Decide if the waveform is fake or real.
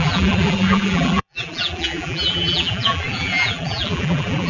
fake